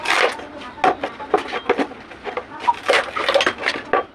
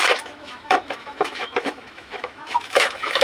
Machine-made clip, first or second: second